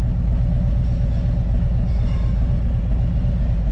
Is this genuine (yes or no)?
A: yes